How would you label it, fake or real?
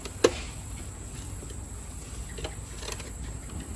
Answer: real